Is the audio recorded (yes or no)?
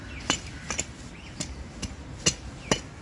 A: yes